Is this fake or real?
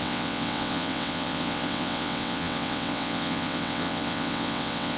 fake